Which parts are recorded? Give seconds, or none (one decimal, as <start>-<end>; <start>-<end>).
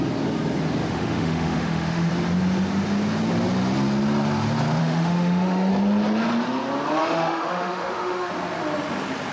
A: 0.0-0.8; 2.1-4.8; 5.7-7.0; 8.3-9.3